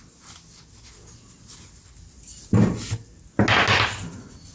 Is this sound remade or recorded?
recorded